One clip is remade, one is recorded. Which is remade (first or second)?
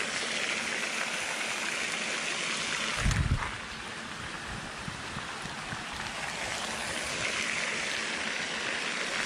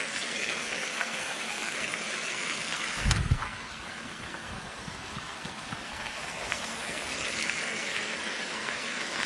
second